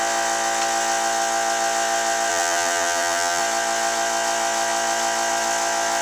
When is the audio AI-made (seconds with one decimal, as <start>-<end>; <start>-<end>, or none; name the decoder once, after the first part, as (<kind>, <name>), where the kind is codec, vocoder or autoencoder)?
2.3-3.4 (vocoder, BigVGAN v2)